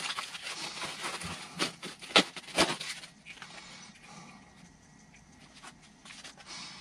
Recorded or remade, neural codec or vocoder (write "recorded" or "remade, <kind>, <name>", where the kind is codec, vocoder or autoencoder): recorded